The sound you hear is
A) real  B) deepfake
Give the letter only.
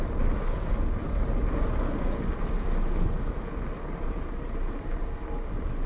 A